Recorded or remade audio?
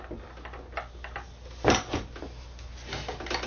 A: recorded